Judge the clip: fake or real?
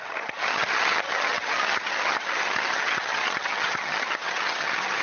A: fake